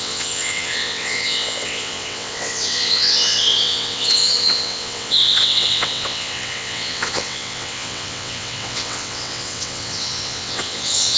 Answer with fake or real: fake